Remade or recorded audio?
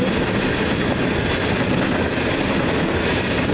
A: recorded